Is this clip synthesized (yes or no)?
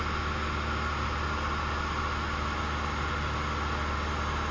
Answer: no